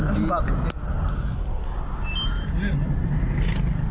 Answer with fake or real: real